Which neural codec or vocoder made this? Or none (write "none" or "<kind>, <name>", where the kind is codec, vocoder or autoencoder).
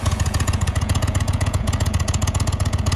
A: vocoder, Vocos